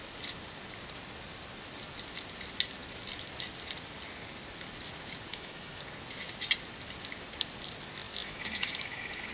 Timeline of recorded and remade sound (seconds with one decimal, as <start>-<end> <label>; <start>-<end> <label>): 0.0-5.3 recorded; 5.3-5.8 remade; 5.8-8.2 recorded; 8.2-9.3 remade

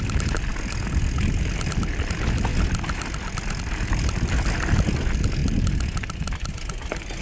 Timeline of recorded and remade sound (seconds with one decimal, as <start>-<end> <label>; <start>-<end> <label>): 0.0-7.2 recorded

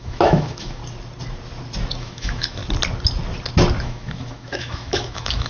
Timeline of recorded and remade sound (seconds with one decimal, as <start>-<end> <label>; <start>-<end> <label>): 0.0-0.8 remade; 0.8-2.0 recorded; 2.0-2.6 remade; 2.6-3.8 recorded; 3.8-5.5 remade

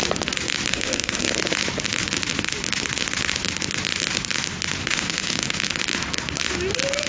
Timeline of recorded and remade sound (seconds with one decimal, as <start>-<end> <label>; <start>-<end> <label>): 0.0-0.7 recorded; 0.7-1.3 remade; 1.3-4.8 recorded; 4.8-5.7 remade; 5.7-7.1 recorded